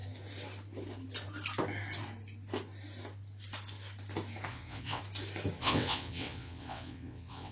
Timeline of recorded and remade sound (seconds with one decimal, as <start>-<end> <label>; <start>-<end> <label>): 0.0-4.5 recorded; 4.5-5.0 remade; 5.0-5.6 recorded; 5.6-7.5 remade